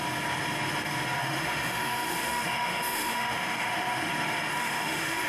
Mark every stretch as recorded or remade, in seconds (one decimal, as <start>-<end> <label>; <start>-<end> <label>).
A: 0.0-1.2 recorded; 1.2-4.1 remade; 4.1-4.6 recorded; 4.6-5.3 remade